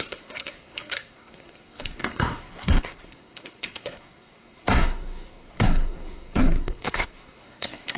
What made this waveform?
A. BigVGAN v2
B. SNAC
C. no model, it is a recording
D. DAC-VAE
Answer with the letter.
B